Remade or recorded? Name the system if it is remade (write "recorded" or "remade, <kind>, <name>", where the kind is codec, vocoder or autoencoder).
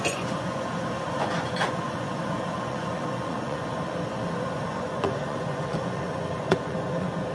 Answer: remade, vocoder, Vocos